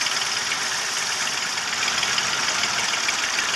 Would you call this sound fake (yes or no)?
no